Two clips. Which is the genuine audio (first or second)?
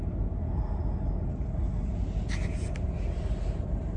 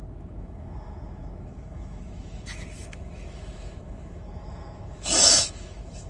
first